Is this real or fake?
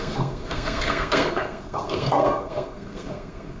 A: fake